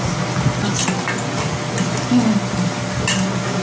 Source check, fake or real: real